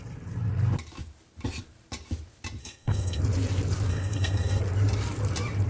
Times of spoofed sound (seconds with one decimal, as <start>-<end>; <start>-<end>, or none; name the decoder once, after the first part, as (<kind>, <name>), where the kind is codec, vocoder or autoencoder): 2.6-3.2 (codec, SNAC); 3.9-4.6